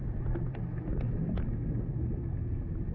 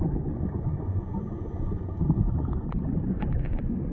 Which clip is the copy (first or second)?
second